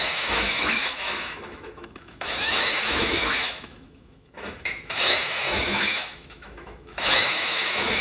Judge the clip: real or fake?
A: fake